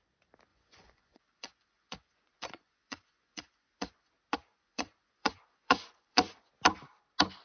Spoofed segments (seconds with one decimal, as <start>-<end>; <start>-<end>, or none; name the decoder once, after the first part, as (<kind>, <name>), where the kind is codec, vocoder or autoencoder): 0.5-4.1 (vocoder, Vocos); 4.5-6.5